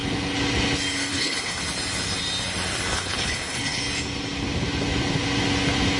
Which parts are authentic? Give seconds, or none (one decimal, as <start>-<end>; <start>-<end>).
0.0-1.1; 1.6-2.9; 3.8-6.0